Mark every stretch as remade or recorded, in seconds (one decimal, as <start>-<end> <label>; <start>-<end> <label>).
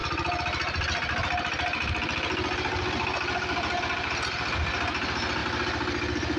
0.0-6.4 recorded